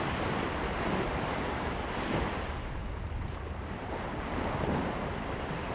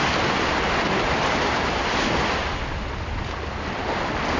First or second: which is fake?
first